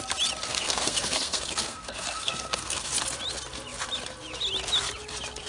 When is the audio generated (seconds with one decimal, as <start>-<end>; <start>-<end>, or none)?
0.5-2.9